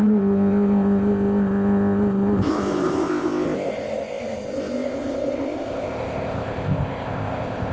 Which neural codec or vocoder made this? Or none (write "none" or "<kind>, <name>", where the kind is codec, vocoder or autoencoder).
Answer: codec, ZipCodec